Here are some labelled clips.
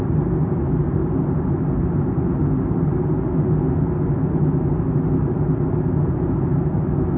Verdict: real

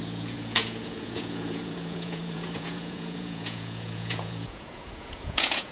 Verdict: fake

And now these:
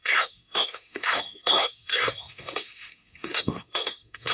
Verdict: fake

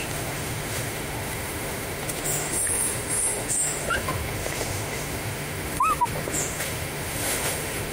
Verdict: fake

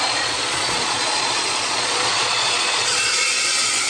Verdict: fake